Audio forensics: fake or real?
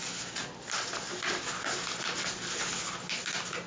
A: real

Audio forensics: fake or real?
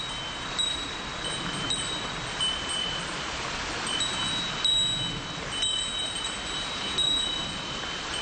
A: real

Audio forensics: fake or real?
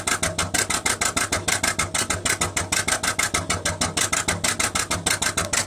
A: real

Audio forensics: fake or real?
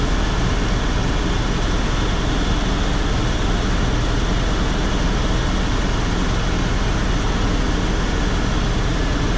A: real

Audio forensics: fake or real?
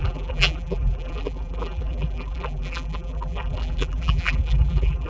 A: fake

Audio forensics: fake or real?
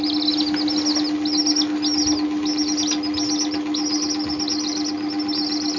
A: real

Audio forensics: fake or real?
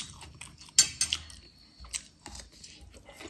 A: real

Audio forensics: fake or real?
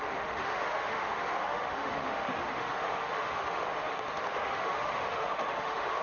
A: fake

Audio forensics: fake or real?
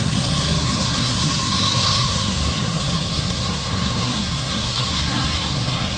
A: fake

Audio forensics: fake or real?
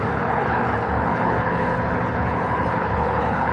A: fake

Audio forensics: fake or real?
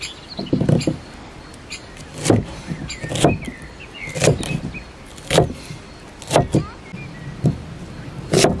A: real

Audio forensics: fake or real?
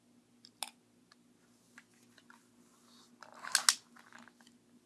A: real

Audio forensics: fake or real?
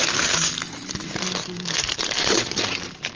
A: fake